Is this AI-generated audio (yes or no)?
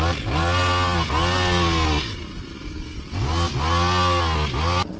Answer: no